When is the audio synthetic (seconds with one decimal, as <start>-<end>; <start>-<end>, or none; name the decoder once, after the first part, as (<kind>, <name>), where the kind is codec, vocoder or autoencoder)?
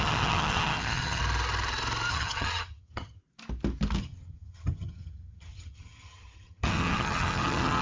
0.0-1.2 (vocoder, HiFi-GAN); 2.1-3.2; 4.0-7.8